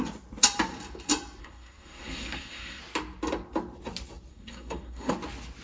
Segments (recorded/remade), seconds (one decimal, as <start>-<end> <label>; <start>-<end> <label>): 0.0-1.4 recorded; 1.4-2.8 remade; 2.8-4.3 recorded; 4.3-5.1 remade; 5.1-5.6 recorded